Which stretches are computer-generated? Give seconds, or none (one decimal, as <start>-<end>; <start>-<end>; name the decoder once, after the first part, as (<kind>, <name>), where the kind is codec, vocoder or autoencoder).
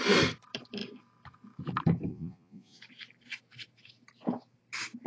2.1-2.8 (vocoder, Vocos)